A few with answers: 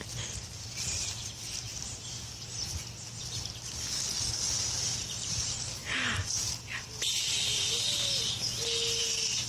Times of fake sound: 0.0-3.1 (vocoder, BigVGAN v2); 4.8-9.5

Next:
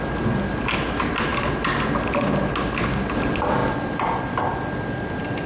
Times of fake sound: none

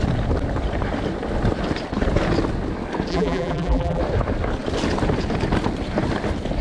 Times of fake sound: 3.1-4.0 (vocoder, BigVGAN v2)

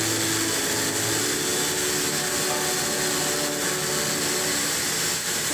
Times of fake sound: none

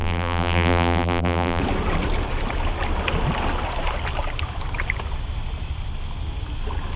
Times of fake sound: 0.0-1.6 (vocoder, BigVGAN v2)

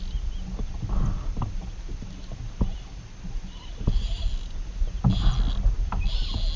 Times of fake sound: none

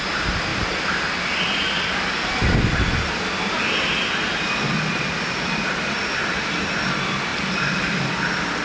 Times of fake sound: 0.5-2.0 (vocoder, BigVGAN v2); 7.3-8.1